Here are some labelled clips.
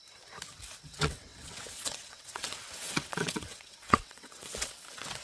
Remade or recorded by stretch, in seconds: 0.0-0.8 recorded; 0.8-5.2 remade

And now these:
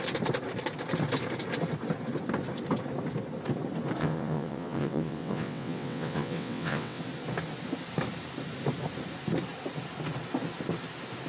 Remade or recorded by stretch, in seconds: 0.0-4.0 recorded; 4.0-7.0 remade; 7.0-11.3 recorded

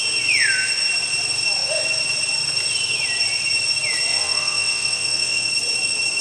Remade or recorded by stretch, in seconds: 0.0-4.1 recorded; 4.1-5.5 remade; 5.5-6.2 recorded

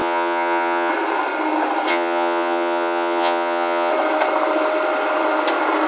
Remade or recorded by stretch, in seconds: 0.0-0.9 remade; 0.9-1.9 recorded; 1.9-3.9 remade; 3.9-5.9 recorded